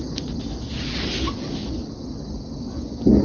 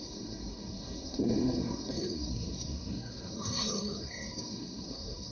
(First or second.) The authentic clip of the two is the first